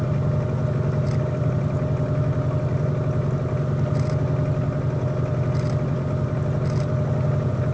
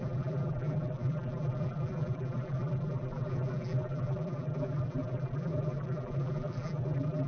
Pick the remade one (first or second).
second